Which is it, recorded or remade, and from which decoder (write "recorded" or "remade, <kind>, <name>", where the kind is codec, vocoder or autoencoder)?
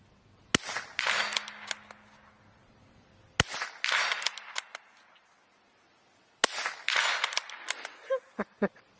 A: recorded